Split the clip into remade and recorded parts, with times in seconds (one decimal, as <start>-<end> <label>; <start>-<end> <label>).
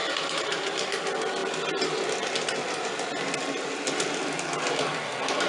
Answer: 0.0-0.7 remade; 0.7-5.5 recorded